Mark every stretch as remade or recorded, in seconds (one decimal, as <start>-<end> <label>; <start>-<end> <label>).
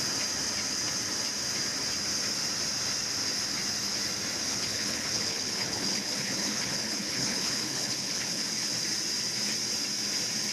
0.0-4.5 recorded; 4.5-8.7 remade; 8.7-10.5 recorded